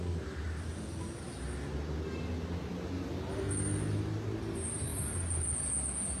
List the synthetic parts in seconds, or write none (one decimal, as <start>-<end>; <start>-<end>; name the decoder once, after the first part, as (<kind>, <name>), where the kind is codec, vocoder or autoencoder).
none